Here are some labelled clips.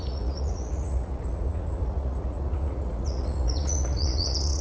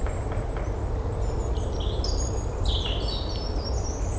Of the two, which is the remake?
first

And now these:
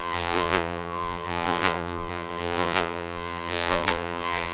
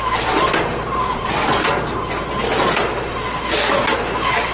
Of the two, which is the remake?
first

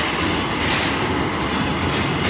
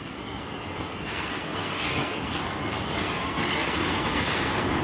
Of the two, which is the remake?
second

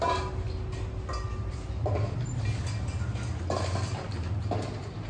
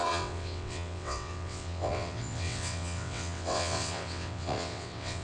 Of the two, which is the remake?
second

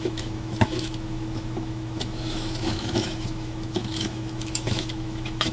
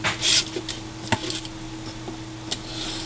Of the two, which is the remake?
first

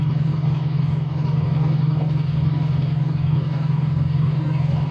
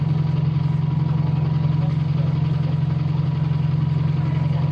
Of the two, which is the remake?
first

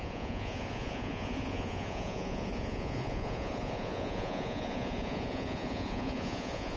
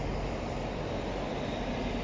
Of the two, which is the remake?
first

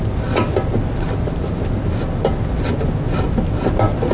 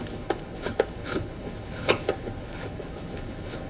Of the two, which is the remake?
second